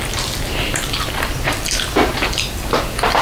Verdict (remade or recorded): recorded